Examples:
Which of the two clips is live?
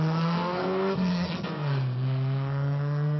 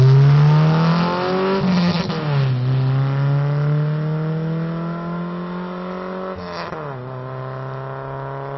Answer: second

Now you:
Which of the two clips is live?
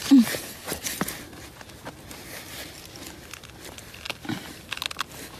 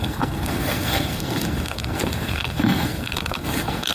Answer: first